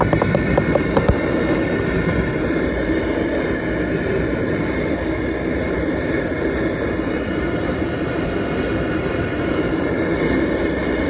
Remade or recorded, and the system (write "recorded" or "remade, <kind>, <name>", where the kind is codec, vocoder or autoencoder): remade, vocoder, BigVGAN v2